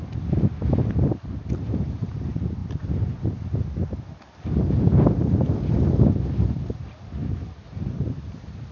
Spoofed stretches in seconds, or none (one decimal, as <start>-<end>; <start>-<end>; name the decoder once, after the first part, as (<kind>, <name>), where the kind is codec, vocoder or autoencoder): none